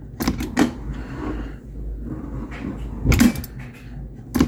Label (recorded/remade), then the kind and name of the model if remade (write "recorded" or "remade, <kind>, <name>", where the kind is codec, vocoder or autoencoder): recorded